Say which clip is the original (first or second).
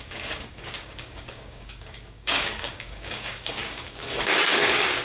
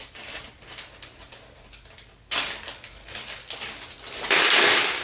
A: second